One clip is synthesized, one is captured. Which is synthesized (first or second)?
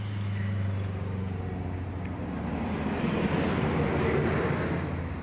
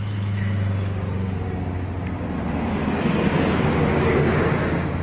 first